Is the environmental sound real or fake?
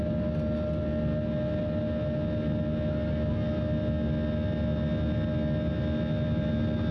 real